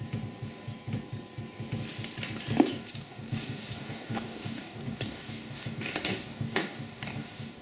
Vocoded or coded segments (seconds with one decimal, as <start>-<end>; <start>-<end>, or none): 2.7-7.6